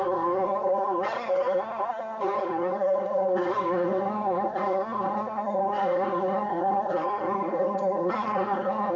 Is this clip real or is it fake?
fake